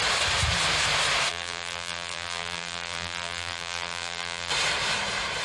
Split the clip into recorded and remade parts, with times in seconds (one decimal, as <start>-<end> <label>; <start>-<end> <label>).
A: 0.0-1.3 recorded; 1.3-4.5 remade; 4.5-5.4 recorded